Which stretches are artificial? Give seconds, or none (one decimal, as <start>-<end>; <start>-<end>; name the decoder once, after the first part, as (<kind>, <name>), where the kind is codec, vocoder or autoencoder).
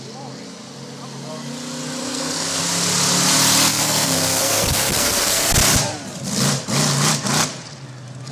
2.0-2.6 (codec, SNAC); 3.7-5.5